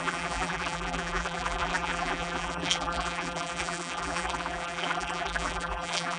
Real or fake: fake